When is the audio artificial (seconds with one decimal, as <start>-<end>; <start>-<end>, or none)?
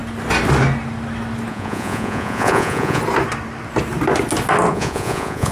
1.5-3.0; 4.7-5.5